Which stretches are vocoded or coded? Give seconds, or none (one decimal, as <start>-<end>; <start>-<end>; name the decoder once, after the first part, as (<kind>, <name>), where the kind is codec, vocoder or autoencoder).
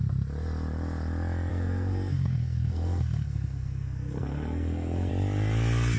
1.5-5.1 (codec, SNAC)